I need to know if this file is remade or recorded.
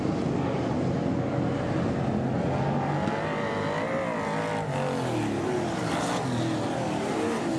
recorded